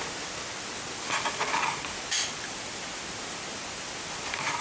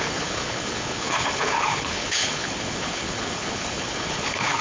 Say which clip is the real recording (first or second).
first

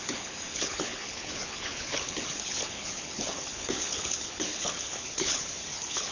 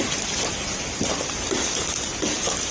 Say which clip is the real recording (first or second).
second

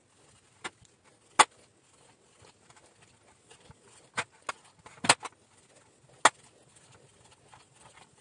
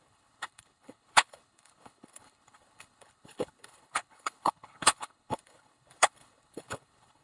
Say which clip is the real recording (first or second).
first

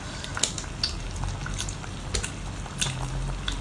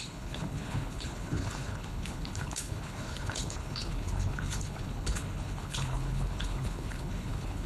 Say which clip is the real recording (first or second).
first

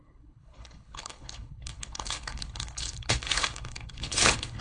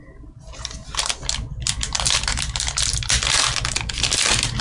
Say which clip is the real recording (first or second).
second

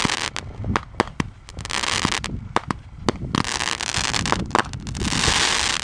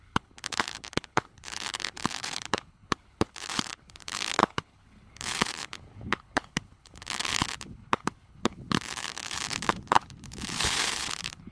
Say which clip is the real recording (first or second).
first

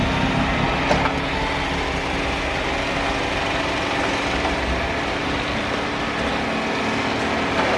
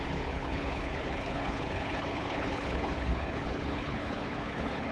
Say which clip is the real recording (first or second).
first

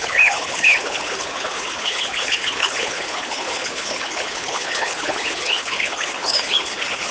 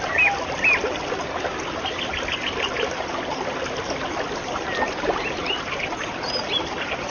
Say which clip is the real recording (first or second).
second